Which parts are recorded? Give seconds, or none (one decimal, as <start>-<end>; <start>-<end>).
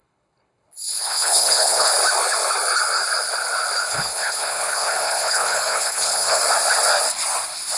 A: 1.9-3.9; 6.4-7.8